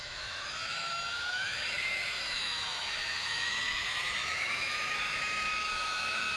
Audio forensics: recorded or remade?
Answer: remade